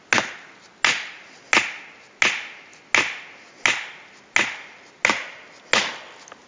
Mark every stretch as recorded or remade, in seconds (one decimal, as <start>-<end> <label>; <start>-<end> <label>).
0.0-6.5 recorded